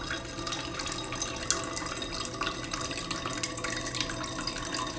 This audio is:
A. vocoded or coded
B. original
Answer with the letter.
B